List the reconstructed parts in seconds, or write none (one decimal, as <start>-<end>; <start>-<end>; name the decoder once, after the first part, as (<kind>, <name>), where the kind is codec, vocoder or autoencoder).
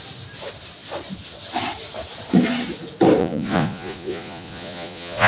3.2-5.3 (vocoder, Vocos)